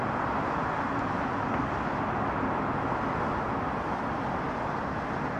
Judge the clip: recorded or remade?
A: recorded